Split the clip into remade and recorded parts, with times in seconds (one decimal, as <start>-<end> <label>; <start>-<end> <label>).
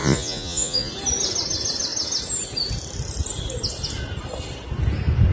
0.0-0.9 remade; 0.9-5.3 recorded